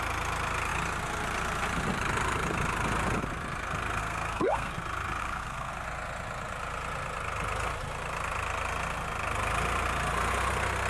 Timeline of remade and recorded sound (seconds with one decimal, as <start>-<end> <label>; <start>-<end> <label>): 0.0-4.0 recorded; 4.0-4.7 remade; 4.7-5.2 recorded; 5.2-5.7 remade; 5.7-10.9 recorded